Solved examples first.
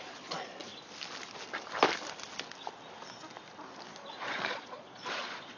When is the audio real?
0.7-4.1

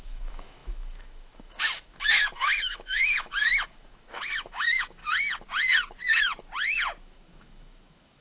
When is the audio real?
5.0-7.0

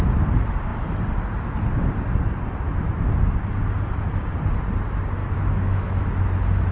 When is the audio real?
0.0-5.2; 6.1-6.7

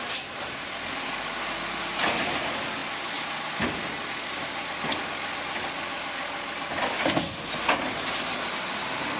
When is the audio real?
0.0-9.2